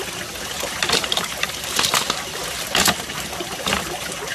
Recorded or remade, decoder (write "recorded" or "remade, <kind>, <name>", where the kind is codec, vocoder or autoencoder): recorded